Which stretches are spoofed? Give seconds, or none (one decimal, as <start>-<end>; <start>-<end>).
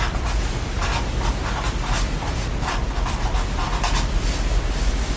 none